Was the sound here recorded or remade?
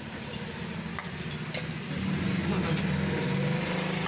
recorded